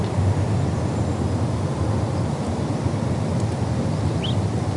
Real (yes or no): yes